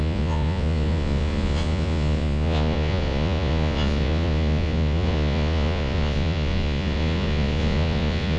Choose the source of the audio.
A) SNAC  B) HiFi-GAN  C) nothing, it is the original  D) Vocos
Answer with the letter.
D